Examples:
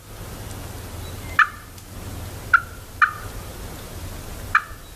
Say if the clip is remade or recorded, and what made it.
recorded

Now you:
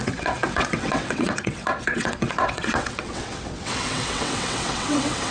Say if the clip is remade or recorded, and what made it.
remade, vocoder, WaveNeXt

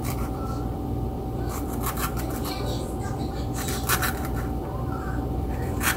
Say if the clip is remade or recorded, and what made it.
remade, vocoder, BigVGAN v2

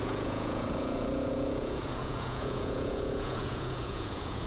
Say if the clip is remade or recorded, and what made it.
remade, vocoder, Vocos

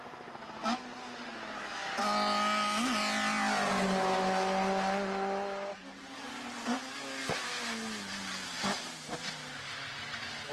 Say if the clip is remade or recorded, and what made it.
recorded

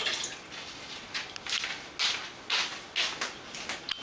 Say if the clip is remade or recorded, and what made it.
recorded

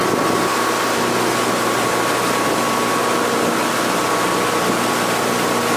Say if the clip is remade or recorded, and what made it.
recorded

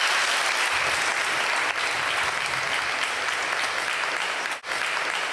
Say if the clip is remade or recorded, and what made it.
recorded